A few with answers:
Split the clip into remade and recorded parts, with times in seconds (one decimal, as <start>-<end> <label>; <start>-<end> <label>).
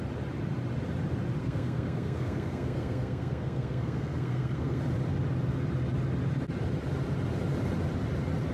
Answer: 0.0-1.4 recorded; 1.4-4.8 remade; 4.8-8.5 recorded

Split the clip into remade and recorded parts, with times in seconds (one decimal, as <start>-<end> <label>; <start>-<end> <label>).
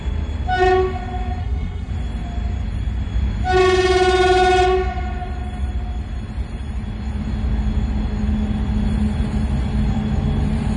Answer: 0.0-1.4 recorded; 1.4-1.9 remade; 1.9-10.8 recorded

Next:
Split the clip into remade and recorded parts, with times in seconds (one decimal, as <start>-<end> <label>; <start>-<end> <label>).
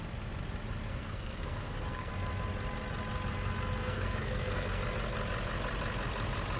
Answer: 0.0-0.9 recorded; 0.9-2.1 remade; 2.1-3.8 recorded; 3.8-4.8 remade; 4.8-6.6 recorded